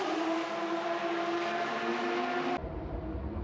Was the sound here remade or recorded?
recorded